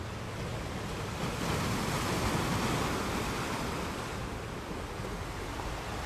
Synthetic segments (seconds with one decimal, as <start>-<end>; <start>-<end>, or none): none